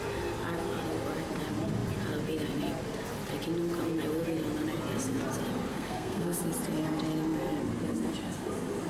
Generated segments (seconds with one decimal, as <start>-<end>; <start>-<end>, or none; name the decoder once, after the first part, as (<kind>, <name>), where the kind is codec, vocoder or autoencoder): 5.7-6.4 (codec, SNAC)